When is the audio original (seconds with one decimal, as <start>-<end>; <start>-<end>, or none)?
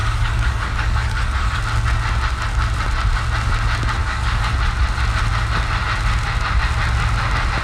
1.6-4.0; 4.5-7.6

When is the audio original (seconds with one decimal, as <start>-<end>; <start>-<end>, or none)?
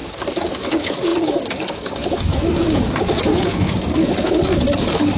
none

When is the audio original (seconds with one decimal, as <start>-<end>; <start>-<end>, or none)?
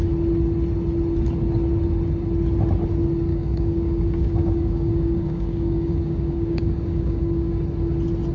0.0-3.3; 7.6-8.3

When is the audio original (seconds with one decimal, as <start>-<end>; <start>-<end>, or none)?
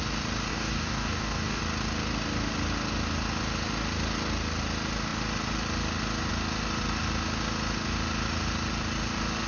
0.0-0.5; 1.6-9.5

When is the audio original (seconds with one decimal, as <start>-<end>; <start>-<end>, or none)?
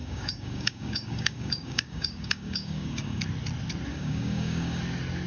3.2-3.9; 4.8-5.3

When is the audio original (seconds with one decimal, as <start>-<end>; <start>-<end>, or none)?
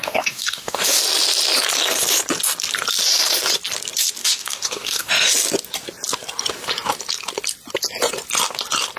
1.0-4.2; 5.1-9.0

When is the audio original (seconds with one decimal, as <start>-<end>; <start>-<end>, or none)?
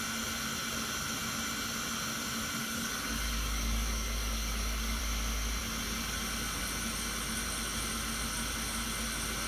0.0-2.6; 5.0-9.5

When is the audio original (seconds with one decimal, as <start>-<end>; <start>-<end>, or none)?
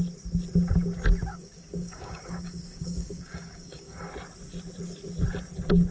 0.0-1.3; 4.1-5.9